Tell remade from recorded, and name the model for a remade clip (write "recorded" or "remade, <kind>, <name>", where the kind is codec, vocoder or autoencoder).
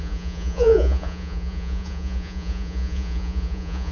remade, vocoder, Vocos